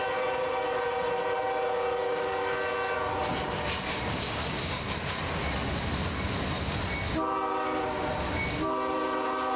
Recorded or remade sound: recorded